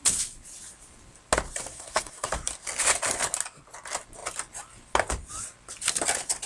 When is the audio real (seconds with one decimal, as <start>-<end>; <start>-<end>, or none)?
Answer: 0.0-1.7; 2.3-6.5